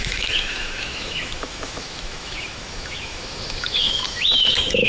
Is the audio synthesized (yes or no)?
yes